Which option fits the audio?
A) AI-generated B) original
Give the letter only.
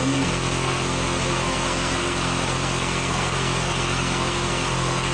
A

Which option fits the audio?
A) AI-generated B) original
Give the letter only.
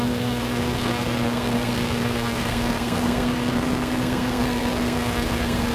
A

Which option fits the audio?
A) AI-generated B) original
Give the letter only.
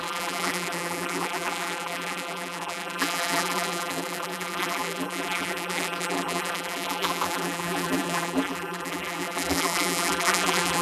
A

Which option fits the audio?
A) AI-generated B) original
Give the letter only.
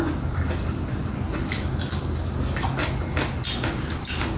B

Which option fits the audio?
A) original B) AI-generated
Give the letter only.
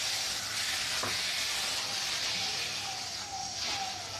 A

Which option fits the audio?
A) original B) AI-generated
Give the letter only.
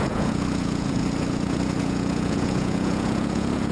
B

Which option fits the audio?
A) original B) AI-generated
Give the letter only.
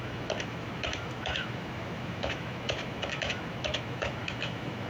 B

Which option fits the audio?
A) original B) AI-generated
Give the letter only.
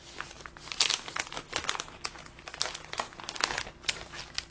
A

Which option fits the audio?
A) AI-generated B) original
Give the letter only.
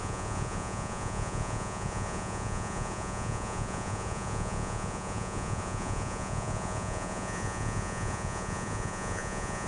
A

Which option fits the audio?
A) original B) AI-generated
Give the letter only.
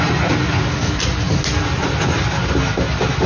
A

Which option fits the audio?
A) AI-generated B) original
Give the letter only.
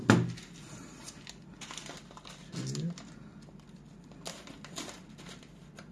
B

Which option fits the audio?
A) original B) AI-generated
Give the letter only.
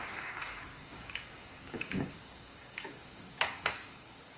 B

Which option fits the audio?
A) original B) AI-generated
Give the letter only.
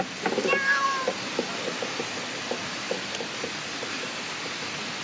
A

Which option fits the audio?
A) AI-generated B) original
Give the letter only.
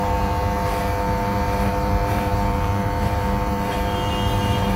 A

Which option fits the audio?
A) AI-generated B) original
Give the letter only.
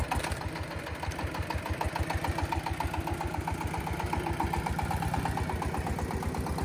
B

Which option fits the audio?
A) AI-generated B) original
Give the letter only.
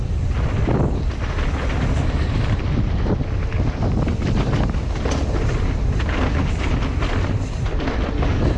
B